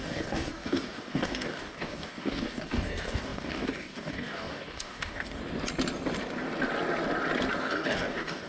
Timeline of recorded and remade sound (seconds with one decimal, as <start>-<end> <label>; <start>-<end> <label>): 0.0-5.4 remade; 5.4-7.6 recorded; 7.6-8.5 remade